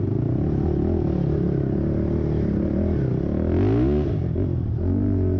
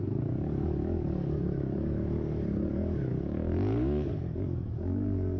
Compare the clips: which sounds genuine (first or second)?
first